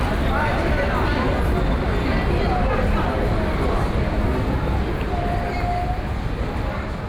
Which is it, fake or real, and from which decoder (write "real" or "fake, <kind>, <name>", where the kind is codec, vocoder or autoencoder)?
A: real